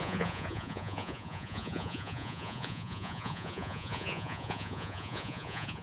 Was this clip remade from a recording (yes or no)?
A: yes